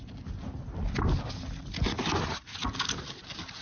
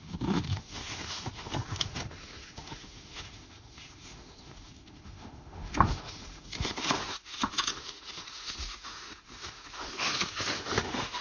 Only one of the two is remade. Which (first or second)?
second